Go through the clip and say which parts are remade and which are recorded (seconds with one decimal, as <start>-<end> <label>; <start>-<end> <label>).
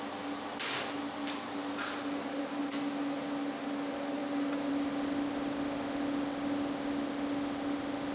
0.0-8.1 recorded